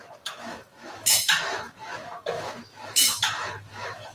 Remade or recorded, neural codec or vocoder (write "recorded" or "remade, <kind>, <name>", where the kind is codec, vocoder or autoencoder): remade, autoencoder, DAC-VAE